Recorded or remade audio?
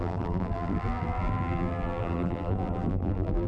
remade